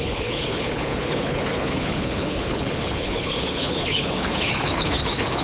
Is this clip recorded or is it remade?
remade